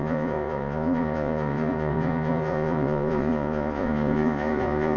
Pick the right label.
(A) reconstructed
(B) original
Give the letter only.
A